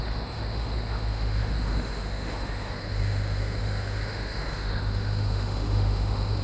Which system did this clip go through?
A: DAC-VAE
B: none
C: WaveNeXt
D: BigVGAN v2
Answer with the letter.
A